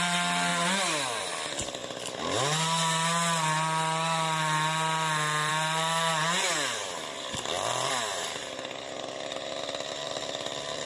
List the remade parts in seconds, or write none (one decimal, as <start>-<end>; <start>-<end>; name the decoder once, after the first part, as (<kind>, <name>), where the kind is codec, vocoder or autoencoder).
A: none